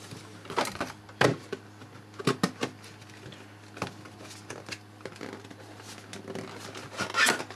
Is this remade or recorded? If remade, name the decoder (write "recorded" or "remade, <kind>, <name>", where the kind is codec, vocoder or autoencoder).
recorded